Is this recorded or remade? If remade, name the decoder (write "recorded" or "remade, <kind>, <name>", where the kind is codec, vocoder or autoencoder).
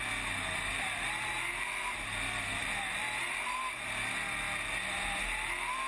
recorded